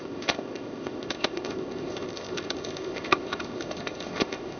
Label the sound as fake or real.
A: fake